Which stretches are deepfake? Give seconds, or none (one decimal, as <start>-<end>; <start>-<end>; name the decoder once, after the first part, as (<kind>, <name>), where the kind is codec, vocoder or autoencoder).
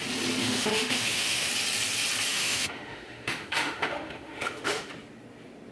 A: 0.4-1.5 (autoencoder, DAC-VAE); 2.3-4.9